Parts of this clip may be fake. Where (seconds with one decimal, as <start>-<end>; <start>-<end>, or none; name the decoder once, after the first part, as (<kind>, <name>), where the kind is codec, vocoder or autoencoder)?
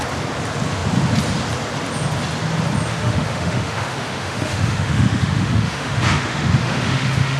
2.9-7.4 (autoencoder, DAC-VAE)